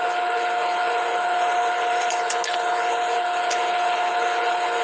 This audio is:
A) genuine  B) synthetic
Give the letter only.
B